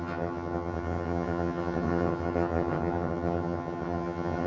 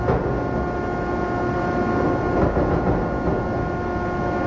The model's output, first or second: first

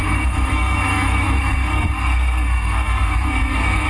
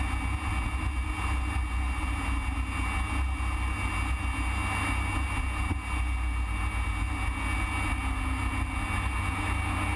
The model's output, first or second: first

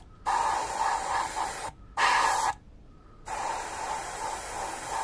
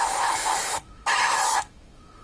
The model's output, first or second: second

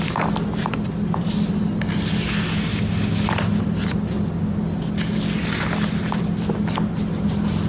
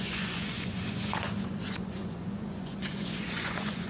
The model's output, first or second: second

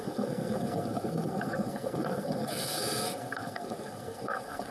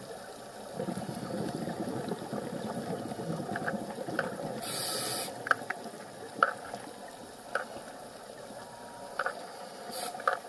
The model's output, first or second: first